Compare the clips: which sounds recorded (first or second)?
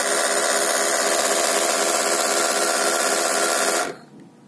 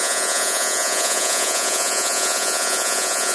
first